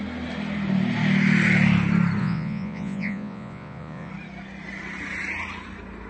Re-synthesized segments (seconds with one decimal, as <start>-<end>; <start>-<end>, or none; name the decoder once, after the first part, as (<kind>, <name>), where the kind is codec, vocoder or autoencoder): 2.2-4.1 (vocoder, Vocos)